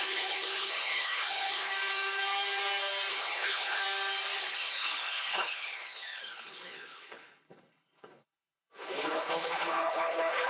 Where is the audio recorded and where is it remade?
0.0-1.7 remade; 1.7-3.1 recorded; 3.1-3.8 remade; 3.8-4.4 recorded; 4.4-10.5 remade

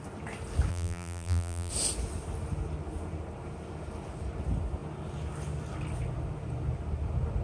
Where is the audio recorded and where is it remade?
0.0-0.7 recorded; 0.7-1.7 remade; 1.7-7.4 recorded

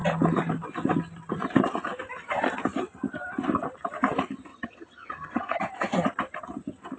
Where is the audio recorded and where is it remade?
0.0-4.5 recorded; 4.5-5.6 remade; 5.6-7.0 recorded

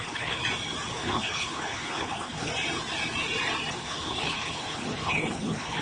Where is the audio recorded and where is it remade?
0.0-0.4 remade; 0.4-0.9 recorded; 0.9-2.5 remade; 2.5-3.7 recorded; 3.7-5.8 remade

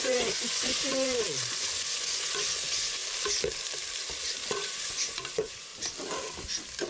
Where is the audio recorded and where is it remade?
0.0-3.0 remade; 3.0-4.5 recorded; 4.5-5.7 remade; 5.7-6.9 recorded

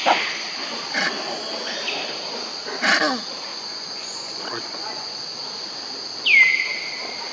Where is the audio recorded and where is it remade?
0.0-3.5 recorded; 3.5-5.2 remade; 5.2-7.3 recorded